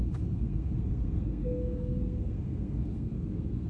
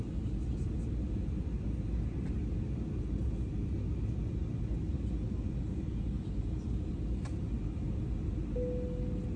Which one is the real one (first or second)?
second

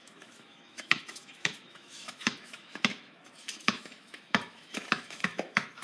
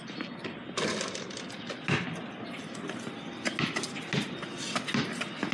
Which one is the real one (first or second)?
second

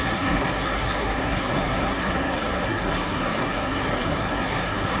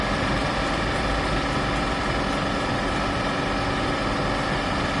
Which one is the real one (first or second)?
second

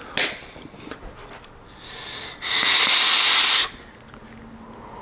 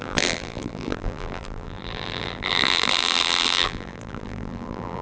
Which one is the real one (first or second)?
first